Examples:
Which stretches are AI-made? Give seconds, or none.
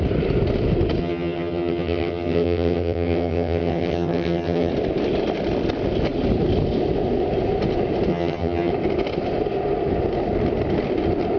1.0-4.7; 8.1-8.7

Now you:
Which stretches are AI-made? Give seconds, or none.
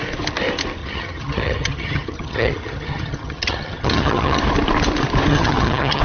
0.8-4.4; 5.3-6.0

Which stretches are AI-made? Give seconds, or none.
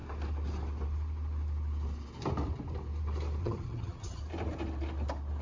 3.4-4.2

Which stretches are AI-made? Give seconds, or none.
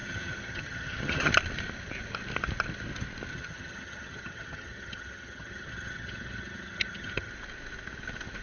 0.0-1.3; 3.3-7.3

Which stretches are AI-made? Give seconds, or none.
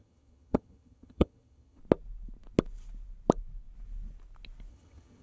0.0-1.8; 4.7-5.2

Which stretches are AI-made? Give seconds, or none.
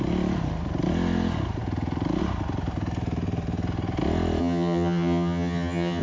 4.4-6.0